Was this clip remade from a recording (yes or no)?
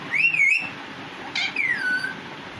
no